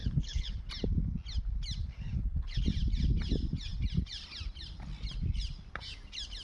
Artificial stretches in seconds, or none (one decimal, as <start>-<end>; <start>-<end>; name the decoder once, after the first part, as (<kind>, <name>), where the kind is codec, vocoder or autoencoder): 0.0-0.7 (codec, HILCodec); 1.8-2.6